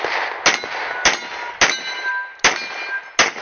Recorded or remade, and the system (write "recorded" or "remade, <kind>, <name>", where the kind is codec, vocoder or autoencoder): recorded